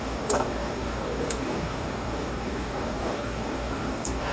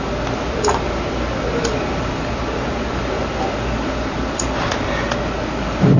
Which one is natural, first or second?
second